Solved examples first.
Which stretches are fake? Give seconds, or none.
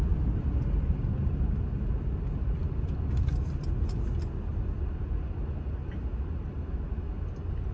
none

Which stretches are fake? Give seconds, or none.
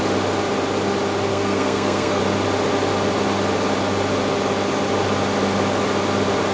1.3-2.2 (codec, SNAC)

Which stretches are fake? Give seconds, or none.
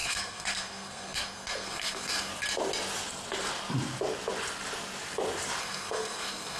0.0-2.3 (codec, SNAC); 5.6-6.6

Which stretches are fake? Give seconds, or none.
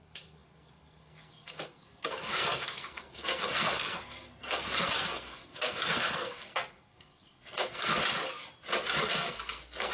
0.0-8.0 (codec, SNAC); 9.0-9.9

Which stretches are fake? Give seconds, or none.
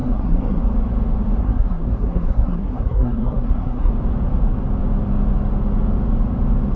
0.0-0.6 (codec, SNAC); 1.4-3.9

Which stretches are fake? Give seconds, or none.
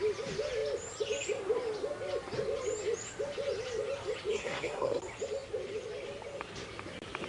4.3-5.0 (codec, SNAC)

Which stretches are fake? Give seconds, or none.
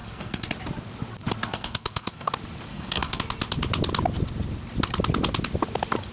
0.0-0.5 (codec, SNAC); 1.4-2.3; 2.7-3.2